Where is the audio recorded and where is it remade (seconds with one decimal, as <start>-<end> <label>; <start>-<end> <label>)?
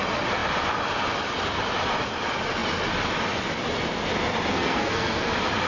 0.0-4.5 recorded; 4.5-5.3 remade; 5.3-5.7 recorded